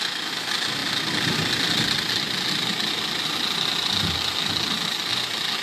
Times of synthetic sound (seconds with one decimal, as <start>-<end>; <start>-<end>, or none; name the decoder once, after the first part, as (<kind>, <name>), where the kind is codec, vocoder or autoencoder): none